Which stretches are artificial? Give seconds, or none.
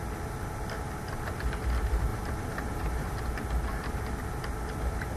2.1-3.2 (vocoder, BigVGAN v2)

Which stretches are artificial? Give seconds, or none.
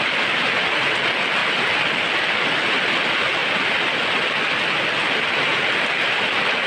none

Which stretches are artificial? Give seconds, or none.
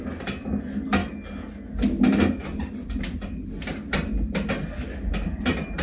none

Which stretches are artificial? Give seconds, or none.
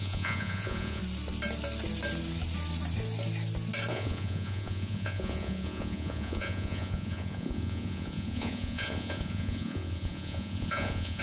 0.0-1.0 (vocoder, Vocos); 3.9-11.2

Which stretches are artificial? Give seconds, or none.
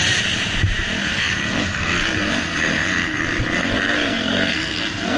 1.0-3.2 (codec, SNAC); 3.6-5.2